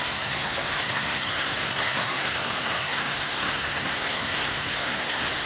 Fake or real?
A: fake